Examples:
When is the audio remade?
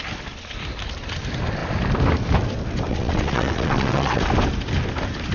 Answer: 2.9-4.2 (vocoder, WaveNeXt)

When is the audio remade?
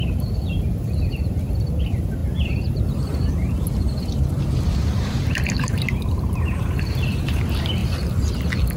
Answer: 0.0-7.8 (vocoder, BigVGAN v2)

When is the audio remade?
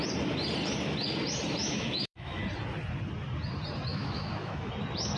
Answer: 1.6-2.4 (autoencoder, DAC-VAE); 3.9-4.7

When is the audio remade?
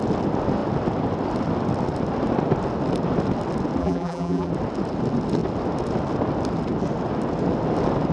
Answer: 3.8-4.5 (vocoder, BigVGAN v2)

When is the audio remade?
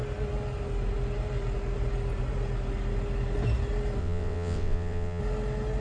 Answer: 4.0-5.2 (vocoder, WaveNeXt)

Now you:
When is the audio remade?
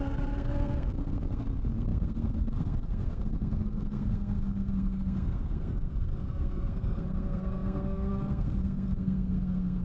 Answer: 0.0-9.8 (codec, SNAC)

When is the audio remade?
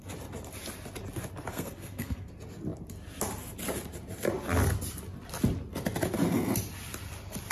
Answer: 1.5-2.3 (codec, SNAC)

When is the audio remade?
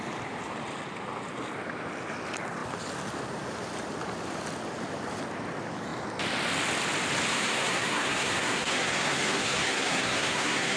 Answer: 7.3-10.8 (codec, SNAC)